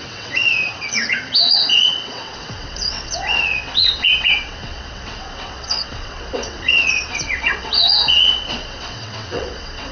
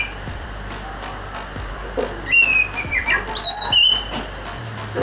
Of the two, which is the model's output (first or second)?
first